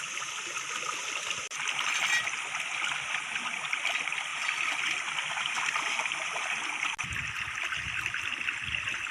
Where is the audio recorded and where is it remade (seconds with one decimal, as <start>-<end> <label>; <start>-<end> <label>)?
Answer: 0.0-4.3 recorded; 4.3-5.6 remade; 5.6-9.1 recorded